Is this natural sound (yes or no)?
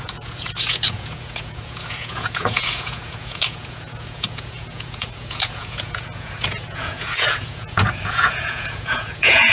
no